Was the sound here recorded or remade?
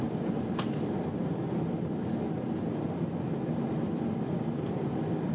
recorded